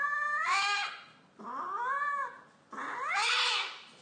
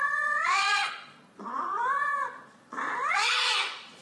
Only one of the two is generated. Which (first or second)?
second